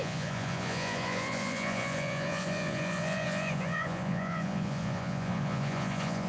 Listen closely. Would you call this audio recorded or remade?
remade